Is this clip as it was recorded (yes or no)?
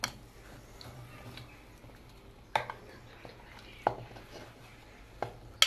yes